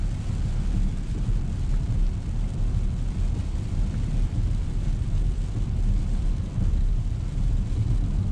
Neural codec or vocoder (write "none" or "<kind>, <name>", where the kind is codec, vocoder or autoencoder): none